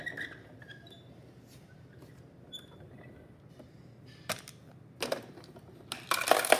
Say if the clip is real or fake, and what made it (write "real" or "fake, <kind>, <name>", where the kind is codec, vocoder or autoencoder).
real